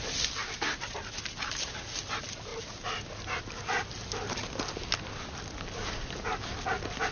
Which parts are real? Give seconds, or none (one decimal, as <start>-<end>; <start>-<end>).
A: 0.0-7.1